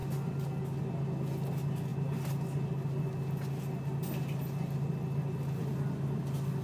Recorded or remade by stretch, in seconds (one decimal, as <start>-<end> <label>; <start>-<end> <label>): 0.0-6.6 recorded